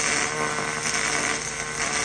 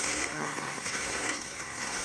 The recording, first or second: first